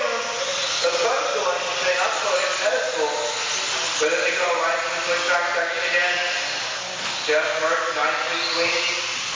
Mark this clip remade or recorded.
recorded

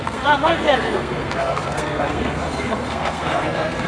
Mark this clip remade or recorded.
remade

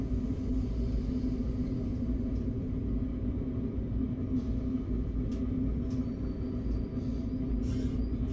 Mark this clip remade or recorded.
recorded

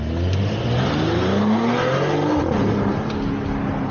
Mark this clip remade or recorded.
recorded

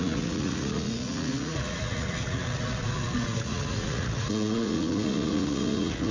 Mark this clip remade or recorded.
remade